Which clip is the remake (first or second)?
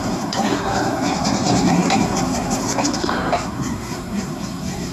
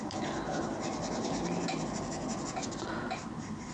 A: first